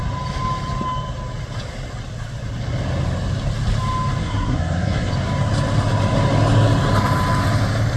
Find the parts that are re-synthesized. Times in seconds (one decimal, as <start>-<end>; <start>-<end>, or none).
4.2-5.1